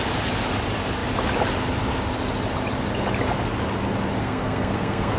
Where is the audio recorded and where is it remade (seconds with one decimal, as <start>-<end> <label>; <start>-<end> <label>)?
0.0-4.2 recorded; 4.2-5.2 remade

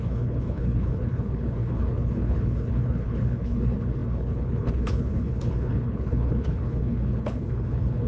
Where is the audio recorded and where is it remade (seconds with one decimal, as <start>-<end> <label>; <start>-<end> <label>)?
0.0-8.1 remade

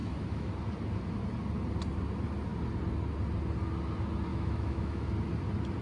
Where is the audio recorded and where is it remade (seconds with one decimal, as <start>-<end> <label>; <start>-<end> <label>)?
0.0-0.5 remade; 0.5-4.3 recorded; 4.3-5.1 remade; 5.1-5.8 recorded

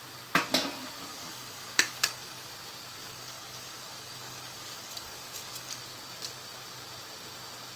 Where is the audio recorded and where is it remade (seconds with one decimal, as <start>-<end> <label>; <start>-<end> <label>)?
0.0-1.1 recorded; 1.1-2.5 remade; 2.5-3.0 recorded; 3.0-5.8 remade; 5.8-7.8 recorded

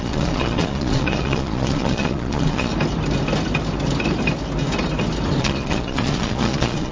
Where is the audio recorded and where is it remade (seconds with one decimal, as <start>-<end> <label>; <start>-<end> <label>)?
0.0-2.7 remade; 2.7-5.4 recorded; 5.4-6.9 remade

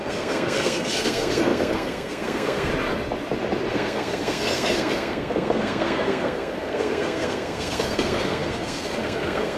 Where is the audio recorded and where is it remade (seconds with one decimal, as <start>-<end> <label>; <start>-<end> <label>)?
0.0-2.7 remade; 2.7-3.7 recorded; 3.7-9.6 remade

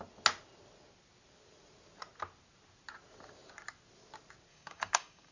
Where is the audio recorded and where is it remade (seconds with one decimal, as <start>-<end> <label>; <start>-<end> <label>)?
0.0-4.5 recorded; 4.5-5.3 remade